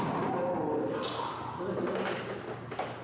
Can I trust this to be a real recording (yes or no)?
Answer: yes